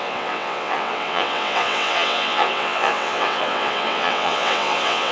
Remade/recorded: remade